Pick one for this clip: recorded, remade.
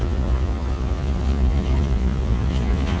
remade